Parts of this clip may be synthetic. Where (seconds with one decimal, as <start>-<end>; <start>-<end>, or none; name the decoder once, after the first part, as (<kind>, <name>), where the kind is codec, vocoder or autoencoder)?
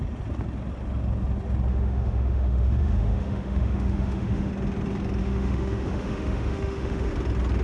1.7-4.5 (autoencoder, DAC-VAE); 5.2-7.1